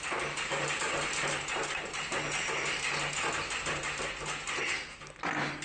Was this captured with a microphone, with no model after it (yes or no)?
yes